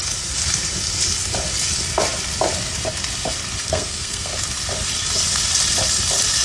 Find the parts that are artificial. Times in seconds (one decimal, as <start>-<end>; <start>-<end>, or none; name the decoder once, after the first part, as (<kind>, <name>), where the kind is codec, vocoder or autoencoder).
3.6-4.3 (codec, SNAC)